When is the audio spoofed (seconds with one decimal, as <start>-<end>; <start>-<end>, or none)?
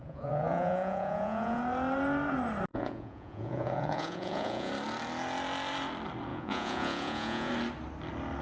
0.0-1.6; 2.7-4.7; 6.3-7.5